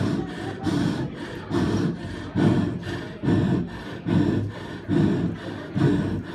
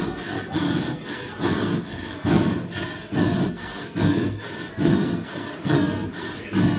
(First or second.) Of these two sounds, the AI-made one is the second